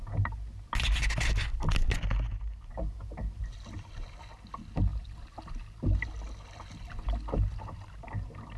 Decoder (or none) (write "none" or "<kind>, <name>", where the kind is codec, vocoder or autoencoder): none